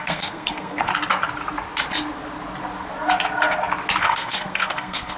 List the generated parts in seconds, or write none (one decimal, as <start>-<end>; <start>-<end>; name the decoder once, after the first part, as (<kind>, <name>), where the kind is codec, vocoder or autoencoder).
0.0-0.9 (codec, SNAC); 4.0-5.2